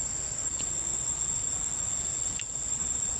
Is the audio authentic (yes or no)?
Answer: no